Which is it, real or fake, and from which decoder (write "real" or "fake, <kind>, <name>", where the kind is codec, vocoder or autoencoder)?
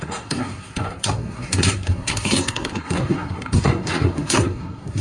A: fake, codec, SNAC